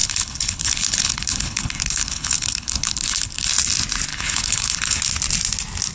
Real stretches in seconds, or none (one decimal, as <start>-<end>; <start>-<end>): 3.5-4.1; 5.0-5.9